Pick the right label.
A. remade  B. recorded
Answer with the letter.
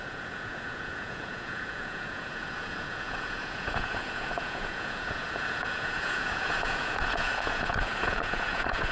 A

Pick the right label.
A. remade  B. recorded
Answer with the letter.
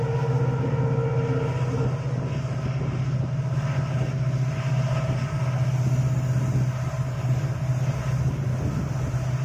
B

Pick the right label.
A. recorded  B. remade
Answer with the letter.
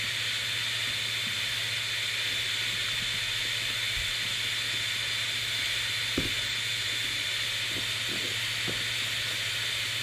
A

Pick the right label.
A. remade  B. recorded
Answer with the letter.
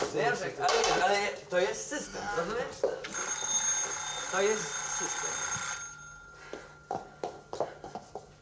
B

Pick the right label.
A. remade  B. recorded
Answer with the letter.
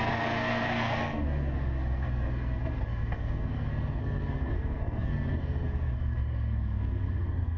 A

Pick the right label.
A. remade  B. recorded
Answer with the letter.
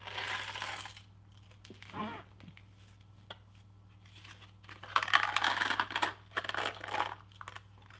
B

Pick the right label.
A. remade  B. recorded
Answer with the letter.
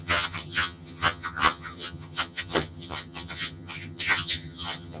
A